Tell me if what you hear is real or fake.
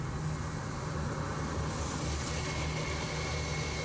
real